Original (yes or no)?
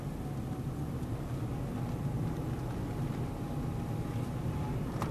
yes